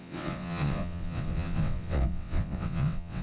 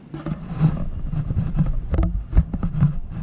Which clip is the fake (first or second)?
first